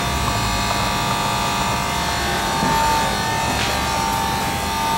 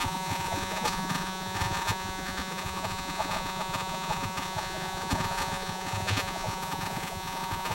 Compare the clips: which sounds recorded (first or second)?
first